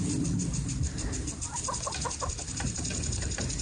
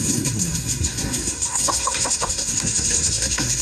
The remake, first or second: second